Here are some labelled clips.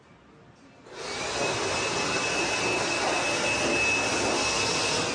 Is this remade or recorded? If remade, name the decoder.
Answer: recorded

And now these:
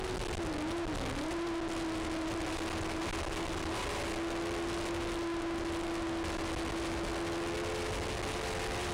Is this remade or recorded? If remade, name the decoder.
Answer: recorded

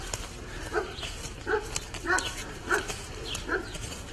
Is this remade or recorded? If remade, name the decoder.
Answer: remade, vocoder, BigVGAN v2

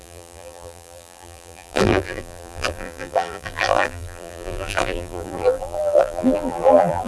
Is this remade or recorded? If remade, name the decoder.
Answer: remade, vocoder, BigVGAN v2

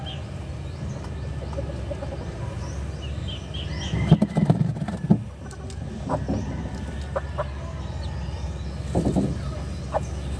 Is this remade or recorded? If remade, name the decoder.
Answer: recorded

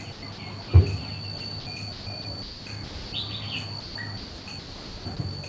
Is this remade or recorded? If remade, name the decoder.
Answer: recorded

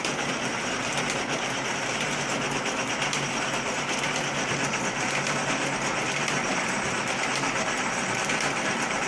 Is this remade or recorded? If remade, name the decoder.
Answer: recorded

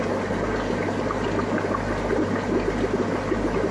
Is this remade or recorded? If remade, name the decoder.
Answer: recorded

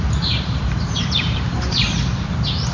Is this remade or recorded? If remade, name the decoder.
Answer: remade, vocoder, BigVGAN v2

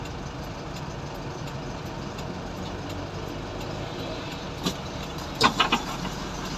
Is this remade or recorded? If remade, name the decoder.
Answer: recorded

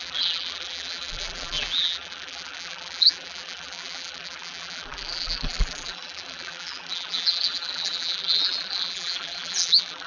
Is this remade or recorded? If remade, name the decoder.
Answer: remade, vocoder, BigVGAN v2